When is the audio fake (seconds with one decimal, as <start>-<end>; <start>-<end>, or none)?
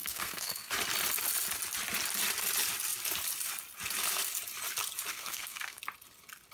0.0-0.7; 5.1-5.8